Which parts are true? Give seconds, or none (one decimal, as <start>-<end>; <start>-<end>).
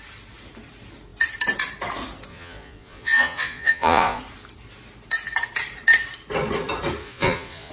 0.0-2.3; 4.2-7.0